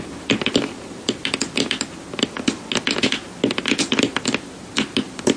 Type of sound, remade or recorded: recorded